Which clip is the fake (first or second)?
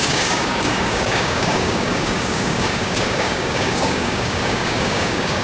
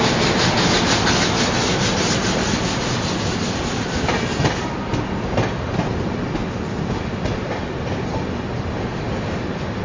first